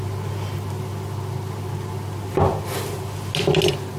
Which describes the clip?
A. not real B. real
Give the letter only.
B